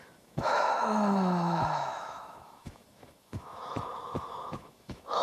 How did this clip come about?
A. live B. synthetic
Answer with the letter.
B